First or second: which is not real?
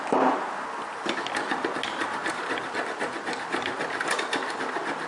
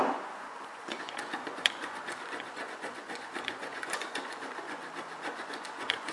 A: second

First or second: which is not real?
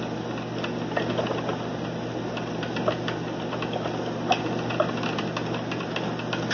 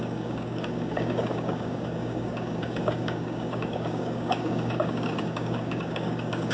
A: second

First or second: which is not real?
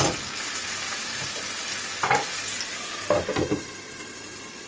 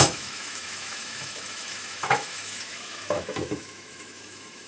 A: second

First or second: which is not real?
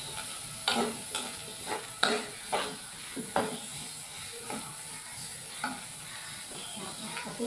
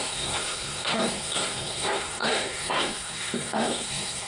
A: second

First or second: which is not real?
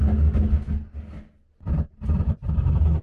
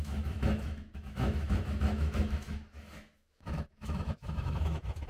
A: second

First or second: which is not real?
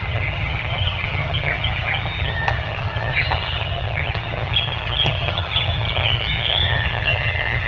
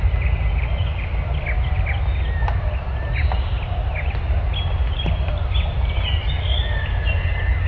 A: first